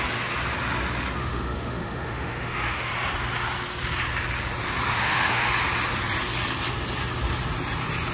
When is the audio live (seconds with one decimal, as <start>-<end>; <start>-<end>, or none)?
0.0-1.2; 2.9-4.9; 5.5-8.1